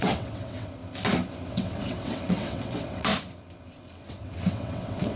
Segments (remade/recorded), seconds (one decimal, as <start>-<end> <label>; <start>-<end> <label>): 0.0-0.8 remade; 0.8-1.5 recorded; 1.5-3.1 remade; 3.1-4.1 recorded; 4.1-5.2 remade